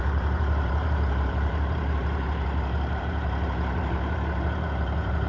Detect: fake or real fake